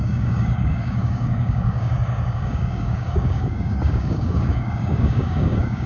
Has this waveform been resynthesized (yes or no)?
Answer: yes